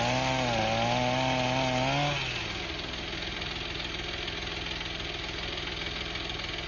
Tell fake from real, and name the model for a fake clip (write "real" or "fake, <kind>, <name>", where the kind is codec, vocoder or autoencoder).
real